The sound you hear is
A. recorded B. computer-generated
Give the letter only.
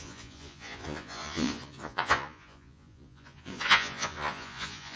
B